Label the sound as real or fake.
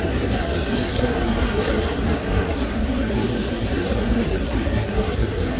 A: fake